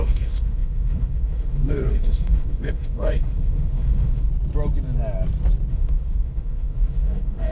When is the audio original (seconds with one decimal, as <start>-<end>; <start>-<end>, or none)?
4.3-5.7